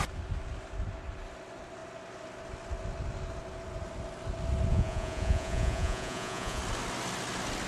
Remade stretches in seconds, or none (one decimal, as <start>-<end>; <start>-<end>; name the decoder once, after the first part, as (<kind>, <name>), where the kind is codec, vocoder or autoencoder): 4.7-6.6 (vocoder, Vocos)